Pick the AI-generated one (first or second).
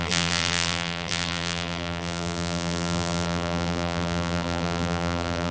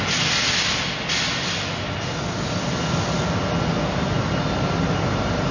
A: first